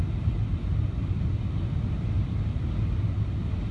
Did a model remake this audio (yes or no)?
no